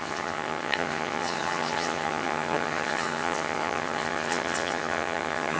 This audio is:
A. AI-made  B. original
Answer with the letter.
A